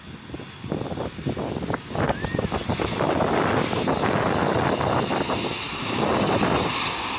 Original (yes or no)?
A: yes